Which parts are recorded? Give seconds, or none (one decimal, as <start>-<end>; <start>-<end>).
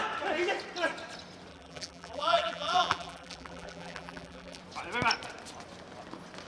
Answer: 0.0-1.5; 4.6-6.5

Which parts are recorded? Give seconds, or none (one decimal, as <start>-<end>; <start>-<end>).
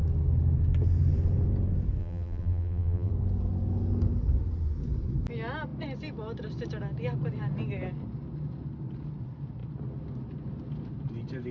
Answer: 0.0-2.0; 3.1-11.5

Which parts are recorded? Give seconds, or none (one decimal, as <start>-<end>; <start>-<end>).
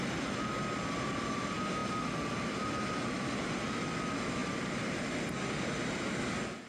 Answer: 0.0-4.4; 5.4-6.7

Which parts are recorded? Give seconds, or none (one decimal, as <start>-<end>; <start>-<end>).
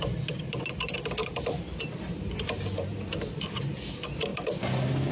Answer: 0.0-1.2; 3.1-5.1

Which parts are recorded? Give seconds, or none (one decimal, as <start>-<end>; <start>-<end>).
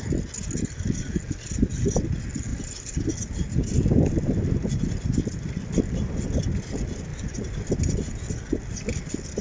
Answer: 0.0-2.5; 3.1-9.4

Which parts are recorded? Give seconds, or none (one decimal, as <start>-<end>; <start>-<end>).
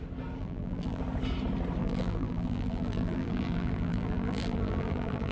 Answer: 0.0-0.4; 1.0-1.8